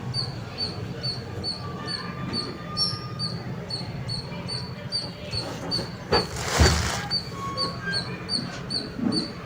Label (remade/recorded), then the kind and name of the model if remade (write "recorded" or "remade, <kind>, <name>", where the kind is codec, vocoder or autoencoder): recorded